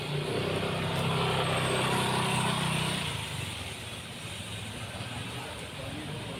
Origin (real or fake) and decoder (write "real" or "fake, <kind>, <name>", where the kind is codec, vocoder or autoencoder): real